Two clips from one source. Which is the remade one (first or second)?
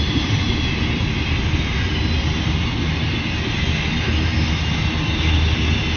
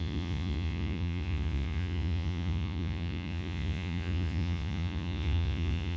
second